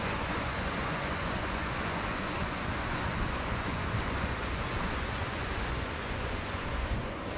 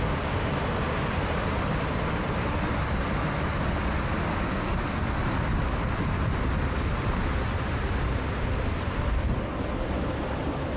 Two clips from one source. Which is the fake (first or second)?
first